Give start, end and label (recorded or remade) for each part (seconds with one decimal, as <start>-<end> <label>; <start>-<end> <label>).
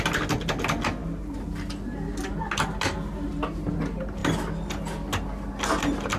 0.0-6.2 recorded